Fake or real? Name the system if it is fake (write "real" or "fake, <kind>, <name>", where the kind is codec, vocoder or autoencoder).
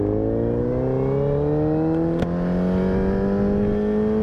real